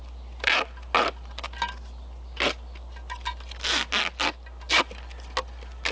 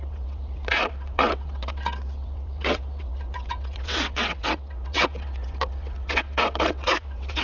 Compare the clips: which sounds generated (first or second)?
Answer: second